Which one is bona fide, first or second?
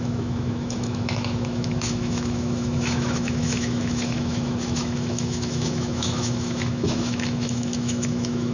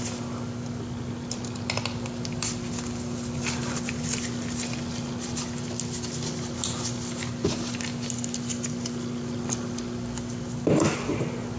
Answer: second